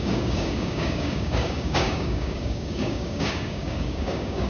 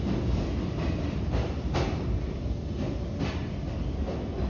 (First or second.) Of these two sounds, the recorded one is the second